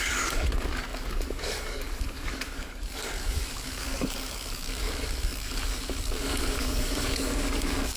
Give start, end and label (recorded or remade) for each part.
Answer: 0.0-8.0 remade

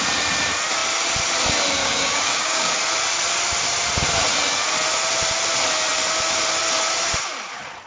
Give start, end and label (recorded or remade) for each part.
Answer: 0.0-1.8 recorded; 1.8-2.7 remade; 2.7-7.9 recorded

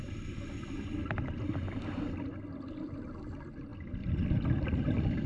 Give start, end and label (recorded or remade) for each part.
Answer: 0.0-5.3 recorded

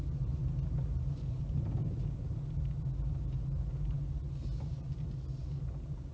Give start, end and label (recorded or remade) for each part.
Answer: 0.0-6.1 recorded